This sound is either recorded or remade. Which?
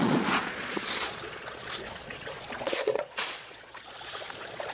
remade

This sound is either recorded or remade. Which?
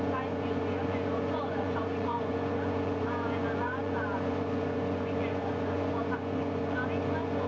remade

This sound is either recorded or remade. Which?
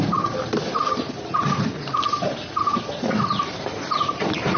recorded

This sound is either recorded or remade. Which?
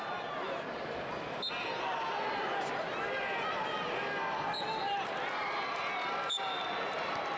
recorded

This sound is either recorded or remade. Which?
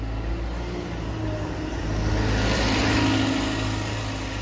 recorded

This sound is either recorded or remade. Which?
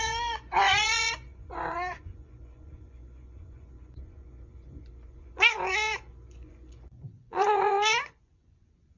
remade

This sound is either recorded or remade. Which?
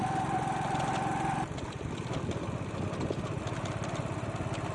recorded